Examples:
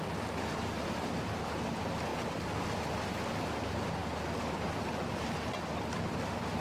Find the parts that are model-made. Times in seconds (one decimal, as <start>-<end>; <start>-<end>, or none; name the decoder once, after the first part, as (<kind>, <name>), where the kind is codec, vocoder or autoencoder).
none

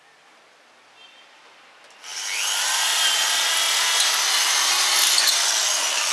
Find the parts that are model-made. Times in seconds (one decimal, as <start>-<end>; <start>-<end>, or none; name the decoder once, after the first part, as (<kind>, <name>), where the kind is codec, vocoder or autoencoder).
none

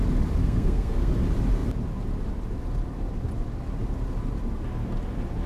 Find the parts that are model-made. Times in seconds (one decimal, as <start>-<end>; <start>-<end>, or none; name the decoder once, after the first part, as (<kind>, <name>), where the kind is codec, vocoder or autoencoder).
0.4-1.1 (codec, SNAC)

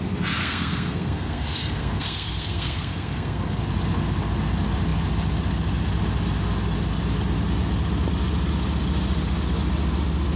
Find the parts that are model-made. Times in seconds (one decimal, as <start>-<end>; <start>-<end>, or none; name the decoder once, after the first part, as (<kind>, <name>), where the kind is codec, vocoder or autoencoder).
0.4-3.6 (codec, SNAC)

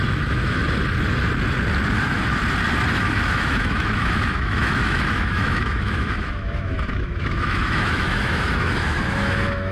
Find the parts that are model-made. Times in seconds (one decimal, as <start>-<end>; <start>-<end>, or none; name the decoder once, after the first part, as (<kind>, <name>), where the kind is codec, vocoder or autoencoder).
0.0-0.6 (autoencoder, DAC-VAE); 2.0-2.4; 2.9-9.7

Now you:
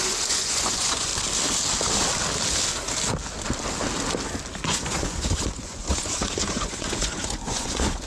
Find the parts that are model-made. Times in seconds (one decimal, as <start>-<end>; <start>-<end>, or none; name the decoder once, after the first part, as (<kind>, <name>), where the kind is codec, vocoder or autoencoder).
0.0-1.1 (vocoder, Vocos); 4.6-8.1

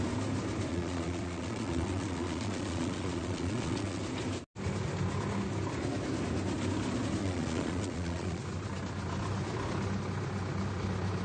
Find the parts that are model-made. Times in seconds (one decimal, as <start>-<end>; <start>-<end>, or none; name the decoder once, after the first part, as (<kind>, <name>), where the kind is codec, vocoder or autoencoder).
0.7-4.0 (vocoder, Vocos); 7.2-8.4